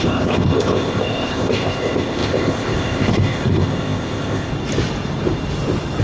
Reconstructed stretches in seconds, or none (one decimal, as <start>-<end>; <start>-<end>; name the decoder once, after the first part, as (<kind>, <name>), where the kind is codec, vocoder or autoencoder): 0.0-4.5 (codec, ZipCodec)